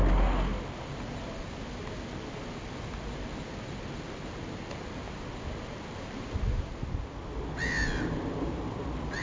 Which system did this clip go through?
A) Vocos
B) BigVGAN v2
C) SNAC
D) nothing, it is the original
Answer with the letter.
D